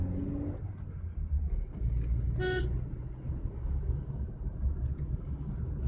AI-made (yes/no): no